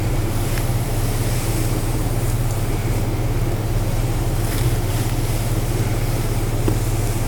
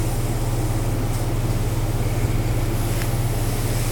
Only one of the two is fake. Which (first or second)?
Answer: first